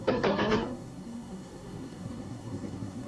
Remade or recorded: remade